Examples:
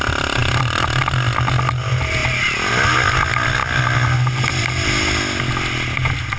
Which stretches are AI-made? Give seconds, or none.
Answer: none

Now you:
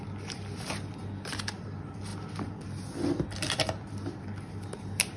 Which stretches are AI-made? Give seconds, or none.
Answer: none

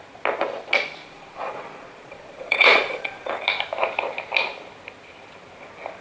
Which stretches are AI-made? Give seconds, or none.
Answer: 1.0-3.3 (vocoder, Vocos)